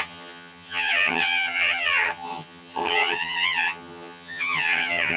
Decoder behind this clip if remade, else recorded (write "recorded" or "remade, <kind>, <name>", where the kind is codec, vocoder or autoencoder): remade, vocoder, HiFi-GAN